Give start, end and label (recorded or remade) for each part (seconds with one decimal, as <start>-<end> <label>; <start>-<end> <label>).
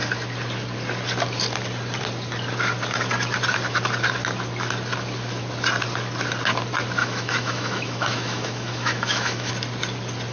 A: 0.0-7.0 recorded; 7.0-9.5 remade; 9.5-10.3 recorded